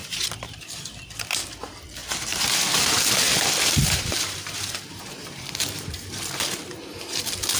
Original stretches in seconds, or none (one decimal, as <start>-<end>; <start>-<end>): 0.9-2.0; 2.6-3.3; 6.2-7.6